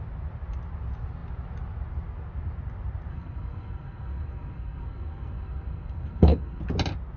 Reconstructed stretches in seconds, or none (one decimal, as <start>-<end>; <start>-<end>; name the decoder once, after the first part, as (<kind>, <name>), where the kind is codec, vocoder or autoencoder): 3.1-6.6 (codec, SNAC)